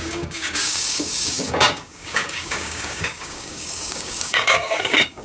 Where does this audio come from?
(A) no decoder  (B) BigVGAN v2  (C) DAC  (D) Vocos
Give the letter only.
C